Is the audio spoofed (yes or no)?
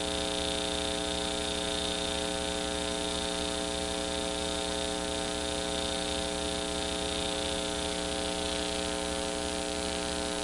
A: no